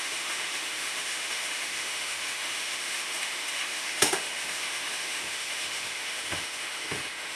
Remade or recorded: remade